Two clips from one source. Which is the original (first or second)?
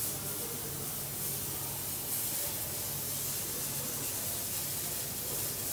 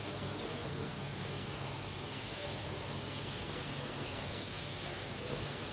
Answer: first